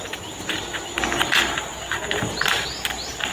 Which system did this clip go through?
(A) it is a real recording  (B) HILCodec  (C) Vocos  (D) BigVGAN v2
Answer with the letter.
A